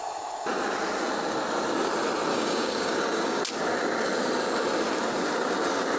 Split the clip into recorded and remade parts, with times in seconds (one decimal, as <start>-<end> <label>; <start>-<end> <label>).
0.0-2.3 recorded; 2.3-3.4 remade; 3.4-6.0 recorded

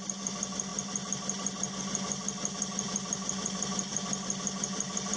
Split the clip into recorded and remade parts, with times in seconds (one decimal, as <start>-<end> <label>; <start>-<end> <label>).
0.0-5.2 recorded

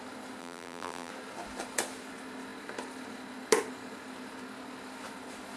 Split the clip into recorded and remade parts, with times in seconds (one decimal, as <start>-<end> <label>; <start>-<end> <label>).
0.0-0.4 recorded; 0.4-1.1 remade; 1.1-5.6 recorded

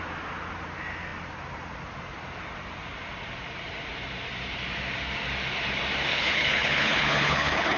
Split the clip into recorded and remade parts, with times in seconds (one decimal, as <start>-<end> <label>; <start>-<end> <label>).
0.0-6.1 recorded; 6.1-7.8 remade